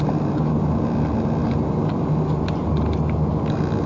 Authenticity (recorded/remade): recorded